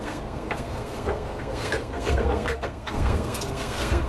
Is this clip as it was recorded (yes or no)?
no